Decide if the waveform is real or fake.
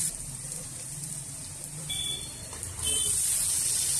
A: fake